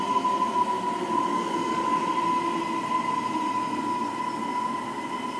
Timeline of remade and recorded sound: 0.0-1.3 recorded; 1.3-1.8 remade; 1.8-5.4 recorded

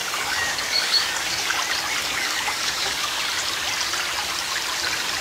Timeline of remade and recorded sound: 0.0-1.5 remade; 1.5-2.0 recorded; 2.0-3.2 remade; 3.2-5.2 recorded

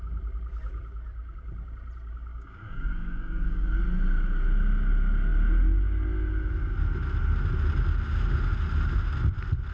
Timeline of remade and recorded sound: 0.0-2.3 recorded; 2.3-3.8 remade; 3.8-9.7 recorded